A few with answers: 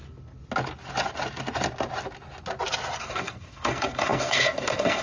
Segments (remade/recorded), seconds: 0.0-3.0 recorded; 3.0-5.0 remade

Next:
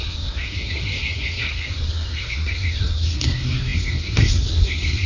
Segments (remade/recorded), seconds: 0.0-5.1 remade

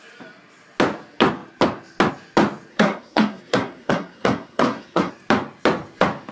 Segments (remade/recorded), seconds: 0.0-2.7 recorded; 2.7-5.1 remade; 5.1-6.3 recorded

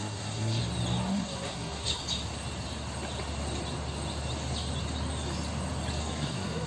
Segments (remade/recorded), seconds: 0.0-0.6 remade; 0.6-1.1 recorded; 1.1-2.0 remade; 2.0-6.0 recorded; 6.0-6.7 remade

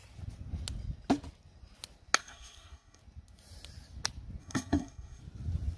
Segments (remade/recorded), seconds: 0.0-2.2 recorded; 2.2-3.0 remade; 3.0-4.4 recorded; 4.4-5.2 remade; 5.2-5.8 recorded

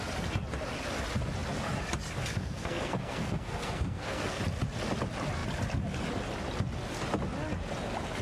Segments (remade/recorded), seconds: 0.0-2.3 recorded; 2.3-4.4 remade; 4.4-8.2 recorded

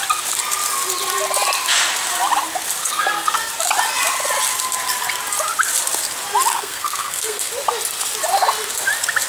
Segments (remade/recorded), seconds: 0.0-2.8 recorded; 2.8-3.5 remade; 3.5-6.5 recorded; 6.5-7.5 remade; 7.5-9.3 recorded